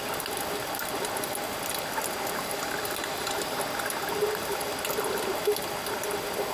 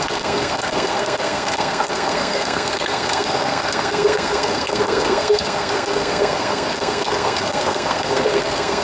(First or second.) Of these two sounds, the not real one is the second